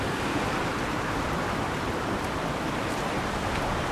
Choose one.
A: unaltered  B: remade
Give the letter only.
B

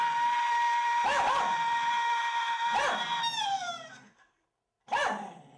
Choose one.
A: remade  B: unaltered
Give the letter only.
A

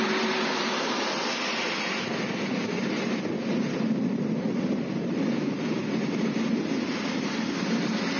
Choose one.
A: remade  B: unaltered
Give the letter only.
B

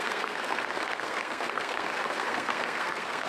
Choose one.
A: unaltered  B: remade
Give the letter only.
B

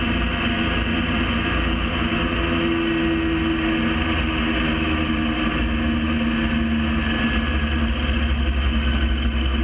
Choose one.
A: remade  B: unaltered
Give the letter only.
B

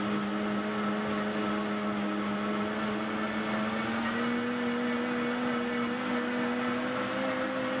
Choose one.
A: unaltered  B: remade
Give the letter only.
A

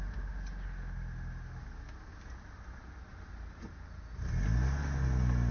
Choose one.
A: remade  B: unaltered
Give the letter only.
B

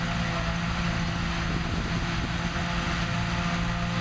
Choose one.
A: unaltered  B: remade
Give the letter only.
A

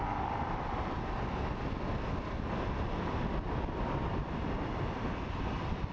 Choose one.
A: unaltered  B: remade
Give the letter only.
A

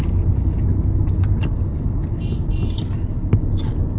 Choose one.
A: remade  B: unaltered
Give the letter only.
B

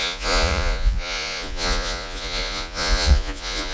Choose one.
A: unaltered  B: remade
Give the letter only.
B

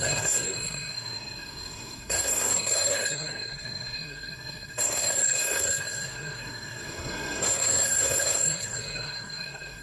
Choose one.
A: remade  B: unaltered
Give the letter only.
A